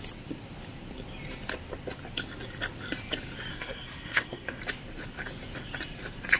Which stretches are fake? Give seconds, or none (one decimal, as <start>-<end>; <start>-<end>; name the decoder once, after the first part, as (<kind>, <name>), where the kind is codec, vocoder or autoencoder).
3.5-4.6 (codec, SNAC)